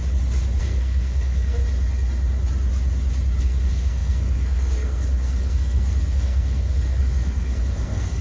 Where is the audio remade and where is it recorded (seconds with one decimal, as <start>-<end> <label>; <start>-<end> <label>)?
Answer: 0.0-0.6 recorded; 0.6-1.6 remade; 1.6-3.4 recorded; 3.4-8.2 remade